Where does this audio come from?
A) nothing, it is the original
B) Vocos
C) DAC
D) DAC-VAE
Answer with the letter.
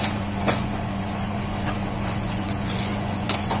B